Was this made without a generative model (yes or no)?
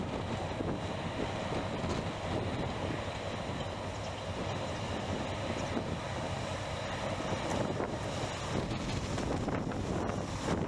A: yes